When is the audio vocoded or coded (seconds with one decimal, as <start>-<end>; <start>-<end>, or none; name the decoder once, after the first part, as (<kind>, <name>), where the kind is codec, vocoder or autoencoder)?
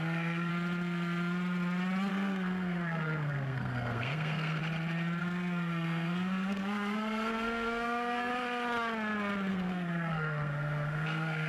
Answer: 0.0-0.5 (codec, SNAC); 2.1-4.6; 5.2-8.3; 9.5-11.5